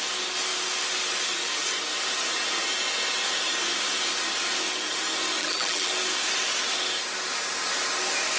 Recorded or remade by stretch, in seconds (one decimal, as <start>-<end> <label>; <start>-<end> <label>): 0.0-5.4 recorded; 5.4-5.9 remade; 5.9-8.4 recorded